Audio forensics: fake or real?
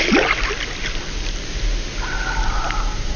real